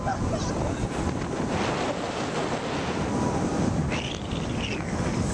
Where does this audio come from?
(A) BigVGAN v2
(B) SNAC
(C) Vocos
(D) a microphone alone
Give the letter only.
D